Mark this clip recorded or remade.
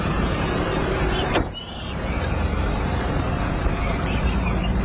remade